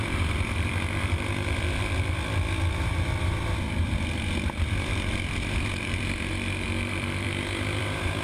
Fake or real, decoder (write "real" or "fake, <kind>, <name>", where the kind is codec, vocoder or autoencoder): fake, vocoder, BigVGAN v2